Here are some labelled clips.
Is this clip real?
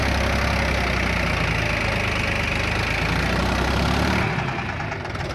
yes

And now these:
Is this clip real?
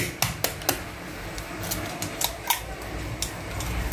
yes